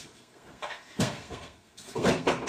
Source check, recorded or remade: remade